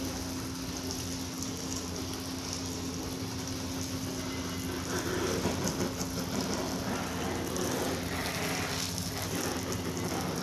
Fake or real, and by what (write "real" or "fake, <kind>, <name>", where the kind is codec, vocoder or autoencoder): real